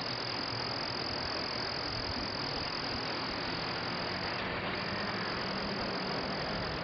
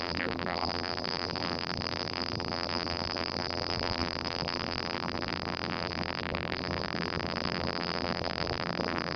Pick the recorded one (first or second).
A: first